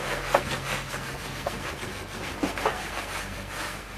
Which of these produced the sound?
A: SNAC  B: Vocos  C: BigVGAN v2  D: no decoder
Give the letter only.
A